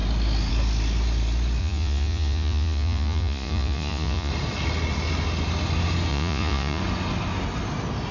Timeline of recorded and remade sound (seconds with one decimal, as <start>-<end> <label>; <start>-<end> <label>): 0.0-1.6 recorded; 1.6-4.3 remade; 4.3-6.1 recorded; 6.1-6.8 remade; 6.8-8.1 recorded

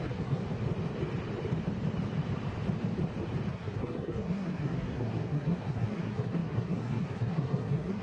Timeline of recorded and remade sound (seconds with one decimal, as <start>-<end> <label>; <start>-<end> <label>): 0.0-0.4 remade; 0.4-3.5 recorded; 3.5-8.0 remade

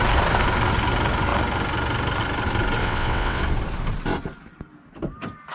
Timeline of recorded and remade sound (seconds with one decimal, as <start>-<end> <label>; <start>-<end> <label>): 0.0-2.8 recorded; 2.8-3.4 remade; 3.4-5.5 recorded

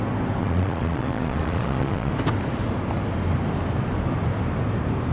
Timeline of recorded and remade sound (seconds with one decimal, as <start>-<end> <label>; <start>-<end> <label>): 0.0-0.4 recorded; 0.4-2.1 remade; 2.1-5.1 recorded

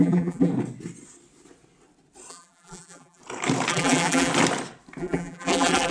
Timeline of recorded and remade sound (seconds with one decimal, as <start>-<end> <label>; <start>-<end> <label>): 0.0-0.5 remade; 0.5-2.3 recorded; 2.3-3.2 remade; 3.2-3.7 recorded; 3.7-4.3 remade; 4.3-5.0 recorded; 5.0-5.9 remade